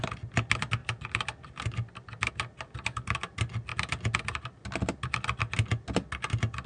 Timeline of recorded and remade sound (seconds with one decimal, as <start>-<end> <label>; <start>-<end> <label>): 0.0-6.7 recorded